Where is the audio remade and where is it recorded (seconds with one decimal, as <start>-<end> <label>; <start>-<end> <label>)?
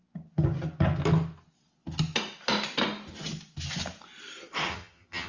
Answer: 0.0-4.7 recorded; 4.7-5.3 remade